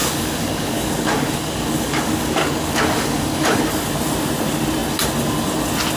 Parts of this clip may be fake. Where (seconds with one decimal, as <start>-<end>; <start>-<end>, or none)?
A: 0.0-3.6